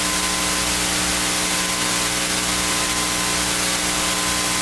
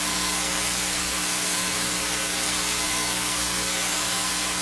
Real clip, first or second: first